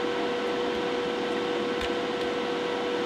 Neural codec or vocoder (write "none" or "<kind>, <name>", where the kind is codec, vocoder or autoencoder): none